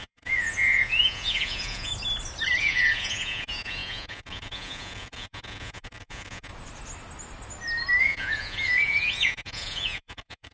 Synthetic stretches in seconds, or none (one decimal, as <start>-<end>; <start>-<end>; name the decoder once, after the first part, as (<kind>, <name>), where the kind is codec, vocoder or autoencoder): 0.0-1.9 (vocoder, Vocos); 2.6-6.5; 8.0-10.5